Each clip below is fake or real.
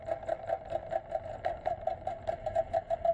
real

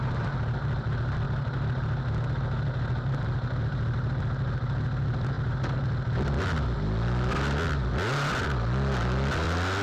real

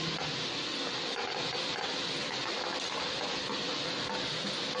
real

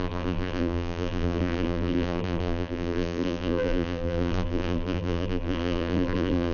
fake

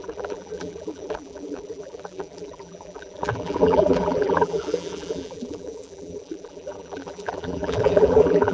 fake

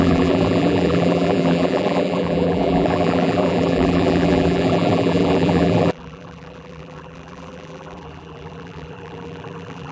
fake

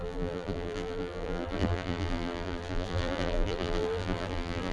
fake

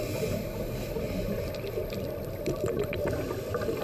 real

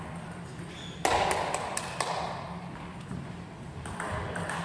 real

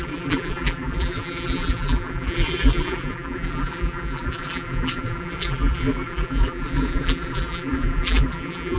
fake